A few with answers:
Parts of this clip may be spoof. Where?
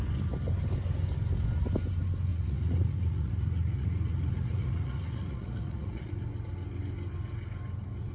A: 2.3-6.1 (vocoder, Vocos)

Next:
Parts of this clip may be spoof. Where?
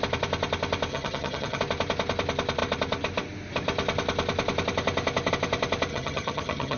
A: 0.9-1.6 (vocoder, HiFi-GAN); 5.9-6.8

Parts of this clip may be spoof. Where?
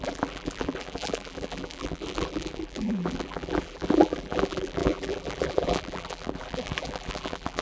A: 0.0-7.6 (vocoder, BigVGAN v2)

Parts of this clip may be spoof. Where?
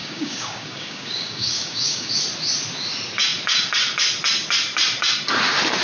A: 0.0-2.1 (codec, DAC)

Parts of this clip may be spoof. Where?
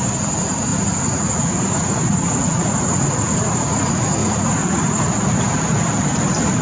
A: 0.7-3.8 (vocoder, Vocos); 4.2-5.1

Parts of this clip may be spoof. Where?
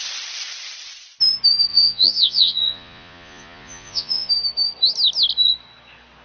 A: 1.7-4.3 (vocoder, Vocos)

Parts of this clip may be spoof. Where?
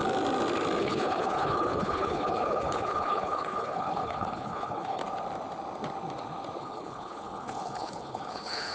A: 0.8-5.0 (codec, HILCodec); 6.6-8.7